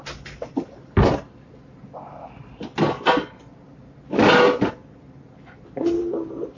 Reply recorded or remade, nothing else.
recorded